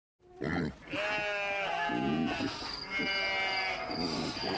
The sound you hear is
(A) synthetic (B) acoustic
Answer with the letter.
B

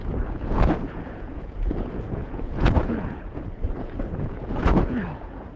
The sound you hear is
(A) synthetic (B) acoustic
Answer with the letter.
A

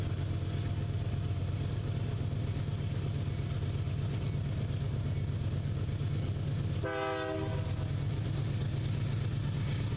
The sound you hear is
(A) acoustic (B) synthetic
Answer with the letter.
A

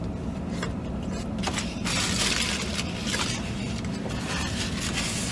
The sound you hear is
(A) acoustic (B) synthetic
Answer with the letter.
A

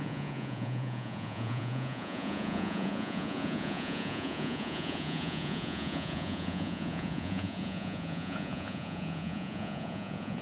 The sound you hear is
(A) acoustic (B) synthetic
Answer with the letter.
B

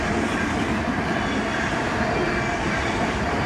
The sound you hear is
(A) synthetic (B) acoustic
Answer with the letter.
B